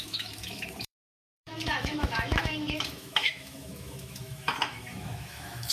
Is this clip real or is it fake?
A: fake